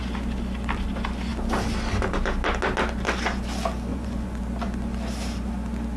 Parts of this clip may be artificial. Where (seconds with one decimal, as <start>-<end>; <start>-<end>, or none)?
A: 3.9-4.4